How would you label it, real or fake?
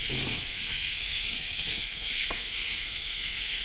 fake